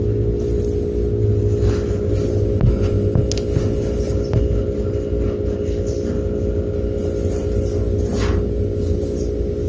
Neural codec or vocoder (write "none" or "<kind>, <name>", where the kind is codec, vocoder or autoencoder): none